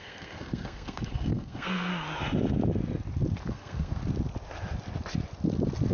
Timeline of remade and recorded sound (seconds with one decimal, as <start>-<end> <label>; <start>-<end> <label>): 0.0-1.9 remade; 1.9-3.5 recorded; 3.5-4.0 remade; 4.0-5.9 recorded